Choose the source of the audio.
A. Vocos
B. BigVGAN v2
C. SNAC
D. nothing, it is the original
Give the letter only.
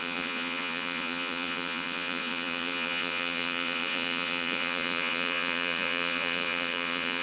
A